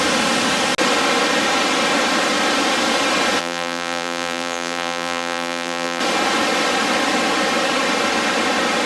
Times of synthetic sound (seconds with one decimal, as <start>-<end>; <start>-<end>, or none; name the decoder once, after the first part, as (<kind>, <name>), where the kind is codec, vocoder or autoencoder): 3.4-6.0 (vocoder, BigVGAN v2)